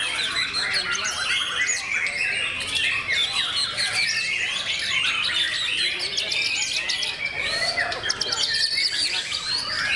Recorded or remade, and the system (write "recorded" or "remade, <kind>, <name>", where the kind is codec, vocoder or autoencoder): recorded